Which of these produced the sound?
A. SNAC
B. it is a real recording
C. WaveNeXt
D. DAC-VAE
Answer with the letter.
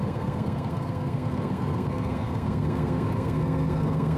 A